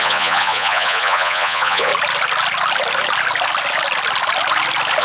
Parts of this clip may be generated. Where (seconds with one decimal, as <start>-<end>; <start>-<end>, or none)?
0.0-1.9